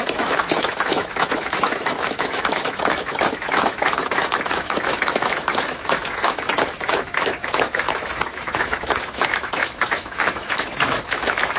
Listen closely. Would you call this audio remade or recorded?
remade